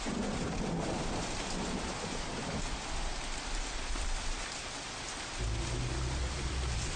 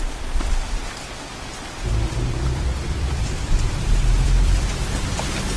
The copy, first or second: second